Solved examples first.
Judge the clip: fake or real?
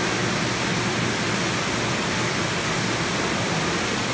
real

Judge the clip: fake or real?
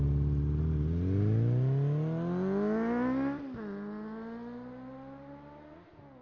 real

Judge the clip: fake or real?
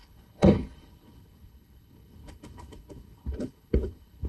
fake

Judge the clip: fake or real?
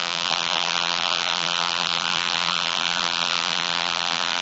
fake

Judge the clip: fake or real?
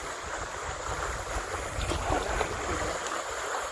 real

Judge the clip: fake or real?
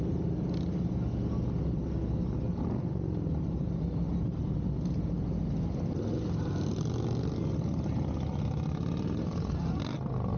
real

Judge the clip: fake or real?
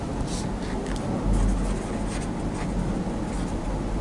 real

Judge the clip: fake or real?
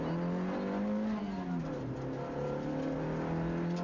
real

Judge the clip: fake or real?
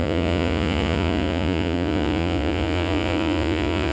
fake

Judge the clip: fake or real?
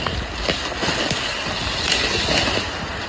real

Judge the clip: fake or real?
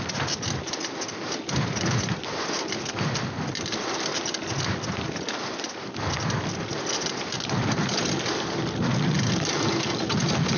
real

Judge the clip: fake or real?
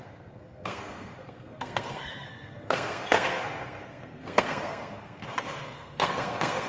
fake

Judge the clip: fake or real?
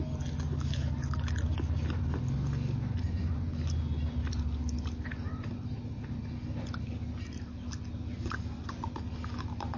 real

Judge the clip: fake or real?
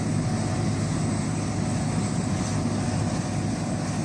real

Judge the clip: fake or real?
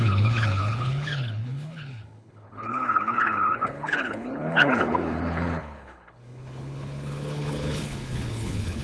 fake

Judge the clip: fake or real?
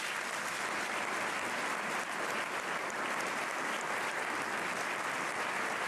real